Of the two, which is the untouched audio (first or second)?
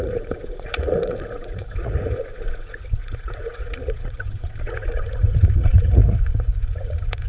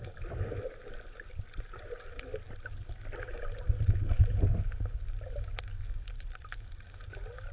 second